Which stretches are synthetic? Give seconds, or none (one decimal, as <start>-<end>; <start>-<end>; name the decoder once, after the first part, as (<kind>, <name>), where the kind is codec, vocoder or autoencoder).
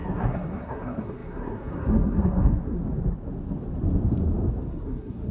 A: 0.0-2.8 (codec, SNAC); 4.7-5.3